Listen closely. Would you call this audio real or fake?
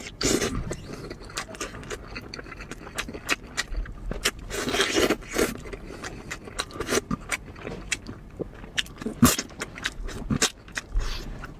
real